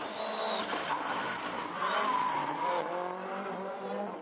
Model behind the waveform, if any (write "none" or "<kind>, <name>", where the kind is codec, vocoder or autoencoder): none